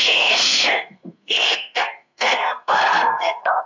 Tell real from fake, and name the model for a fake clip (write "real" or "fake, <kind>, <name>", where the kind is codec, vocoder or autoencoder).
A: fake, codec, SNAC